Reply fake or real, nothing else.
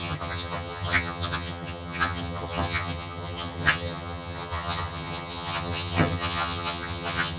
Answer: fake